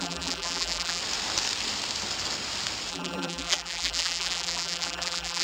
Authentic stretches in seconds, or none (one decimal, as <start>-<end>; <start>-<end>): 1.0-2.9